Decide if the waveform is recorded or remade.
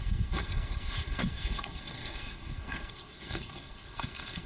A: remade